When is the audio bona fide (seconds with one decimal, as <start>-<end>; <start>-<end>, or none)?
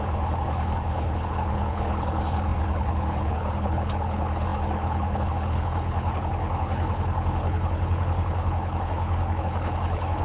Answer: none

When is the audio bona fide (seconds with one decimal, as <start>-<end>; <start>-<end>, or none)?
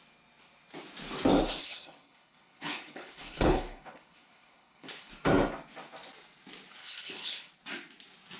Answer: 0.0-1.6; 5.1-6.8; 7.5-8.4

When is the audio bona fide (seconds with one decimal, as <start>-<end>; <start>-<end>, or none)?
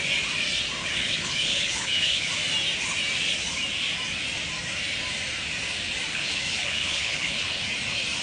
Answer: 0.0-0.8; 2.3-6.1; 7.6-8.2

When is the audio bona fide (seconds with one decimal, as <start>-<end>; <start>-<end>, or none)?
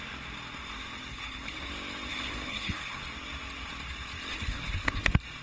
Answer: 0.0-1.1; 1.7-2.1; 3.0-4.3; 5.0-5.4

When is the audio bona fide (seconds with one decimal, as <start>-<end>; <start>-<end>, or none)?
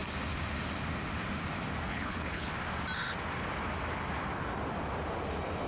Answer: 0.0-1.9; 2.5-5.7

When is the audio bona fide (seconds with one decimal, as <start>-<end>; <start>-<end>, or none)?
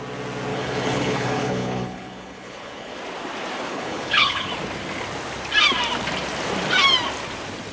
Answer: 0.0-0.5; 3.0-3.7; 4.5-7.7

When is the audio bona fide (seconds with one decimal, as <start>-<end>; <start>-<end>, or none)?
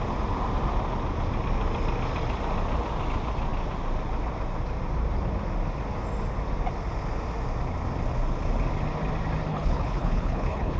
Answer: 0.0-9.5